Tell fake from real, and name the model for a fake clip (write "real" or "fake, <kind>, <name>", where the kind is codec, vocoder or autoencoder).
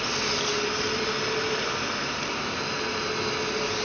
real